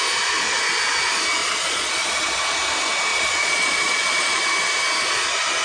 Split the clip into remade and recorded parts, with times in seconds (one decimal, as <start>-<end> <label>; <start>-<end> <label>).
0.0-1.4 recorded; 1.4-2.4 remade; 2.4-3.1 recorded; 3.1-4.4 remade; 4.4-5.6 recorded